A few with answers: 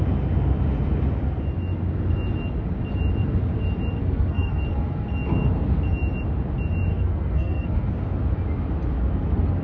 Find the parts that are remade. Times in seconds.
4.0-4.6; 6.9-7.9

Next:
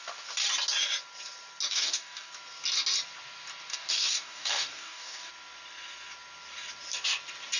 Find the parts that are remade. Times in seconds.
1.7-2.3; 3.7-5.3

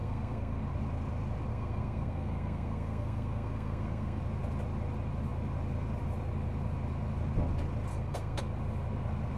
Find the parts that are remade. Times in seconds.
0.0-0.6; 1.5-4.2; 7.9-8.4

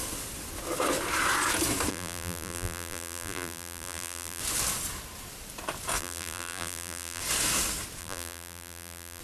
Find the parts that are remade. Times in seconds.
1.9-4.4; 6.0-7.2; 8.0-9.2

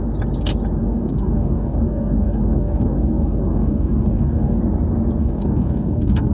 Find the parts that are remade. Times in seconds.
0.8-4.6; 5.2-6.3